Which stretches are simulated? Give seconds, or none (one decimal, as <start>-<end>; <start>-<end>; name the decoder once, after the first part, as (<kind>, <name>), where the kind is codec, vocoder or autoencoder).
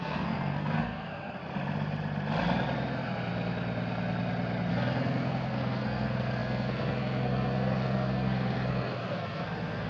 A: 0.0-1.4 (codec, SNAC); 4.7-9.9